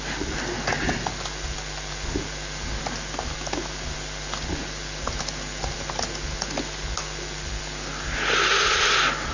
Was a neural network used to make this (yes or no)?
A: no